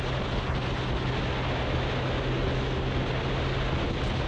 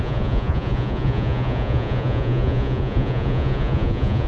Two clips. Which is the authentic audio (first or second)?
first